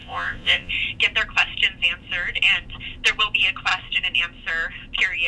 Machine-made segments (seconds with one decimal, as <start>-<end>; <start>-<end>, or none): 0.0-0.7